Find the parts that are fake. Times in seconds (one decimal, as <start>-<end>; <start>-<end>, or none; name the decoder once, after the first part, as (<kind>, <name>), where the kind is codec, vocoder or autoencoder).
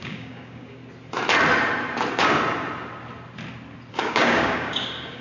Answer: 0.0-0.8 (codec, DAC); 3.9-5.2